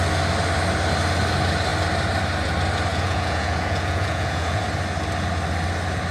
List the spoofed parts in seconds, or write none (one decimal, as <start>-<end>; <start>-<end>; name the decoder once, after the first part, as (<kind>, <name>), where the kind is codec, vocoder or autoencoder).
2.9-4.6 (vocoder, Vocos)